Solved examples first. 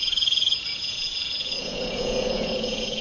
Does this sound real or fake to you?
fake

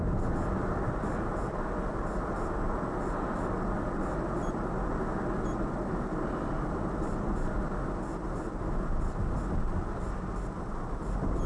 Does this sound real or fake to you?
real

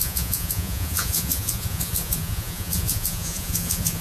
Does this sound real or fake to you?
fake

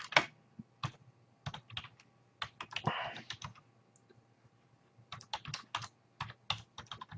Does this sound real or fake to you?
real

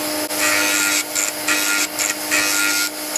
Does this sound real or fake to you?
real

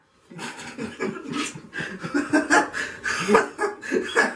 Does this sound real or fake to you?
real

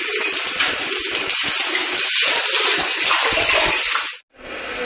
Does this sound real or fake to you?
real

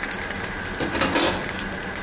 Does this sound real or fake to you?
real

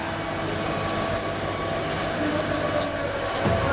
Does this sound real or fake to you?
real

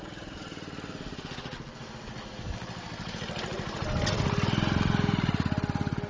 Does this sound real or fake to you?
real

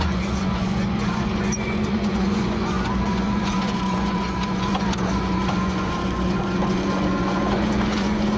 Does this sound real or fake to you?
fake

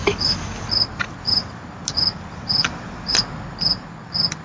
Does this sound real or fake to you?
real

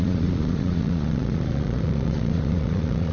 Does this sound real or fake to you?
fake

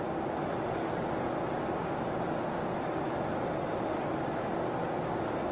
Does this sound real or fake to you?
real